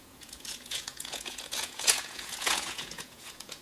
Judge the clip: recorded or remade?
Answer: remade